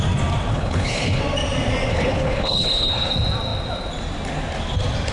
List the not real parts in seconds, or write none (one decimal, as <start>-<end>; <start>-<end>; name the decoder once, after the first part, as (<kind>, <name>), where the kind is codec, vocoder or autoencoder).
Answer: 0.5-1.2 (codec, HILCodec); 1.9-3.1